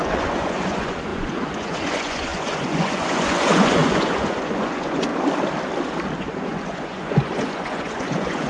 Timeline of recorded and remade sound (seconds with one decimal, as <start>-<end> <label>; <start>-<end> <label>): 0.0-5.1 remade; 5.1-6.2 recorded; 6.2-8.5 remade